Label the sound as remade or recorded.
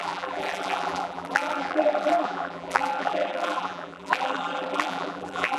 remade